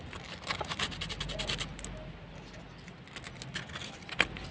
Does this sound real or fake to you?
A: real